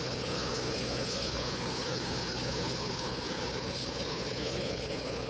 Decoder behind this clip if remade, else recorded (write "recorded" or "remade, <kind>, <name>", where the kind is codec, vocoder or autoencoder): remade, codec, HILCodec